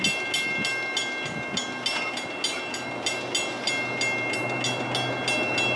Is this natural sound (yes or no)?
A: yes